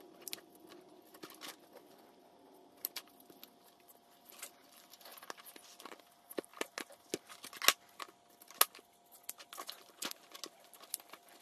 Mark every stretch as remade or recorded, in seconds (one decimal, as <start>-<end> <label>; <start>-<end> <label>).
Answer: 0.0-11.4 recorded